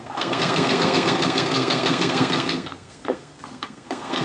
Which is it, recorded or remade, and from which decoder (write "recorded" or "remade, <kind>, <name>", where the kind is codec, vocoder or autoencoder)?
remade, codec, SNAC